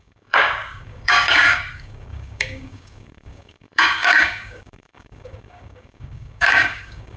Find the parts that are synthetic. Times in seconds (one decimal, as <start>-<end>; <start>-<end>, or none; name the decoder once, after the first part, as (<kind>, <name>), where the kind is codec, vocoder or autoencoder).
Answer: 0.0-7.2 (codec, DAC)